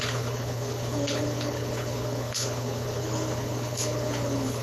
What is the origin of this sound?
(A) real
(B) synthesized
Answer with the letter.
B